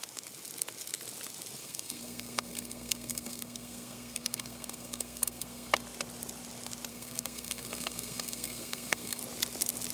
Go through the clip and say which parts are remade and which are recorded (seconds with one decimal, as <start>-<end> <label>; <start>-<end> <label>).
0.0-1.6 recorded; 1.6-5.7 remade; 5.7-6.9 recorded; 6.9-9.2 remade; 9.2-9.9 recorded